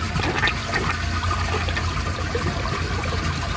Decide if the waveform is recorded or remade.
recorded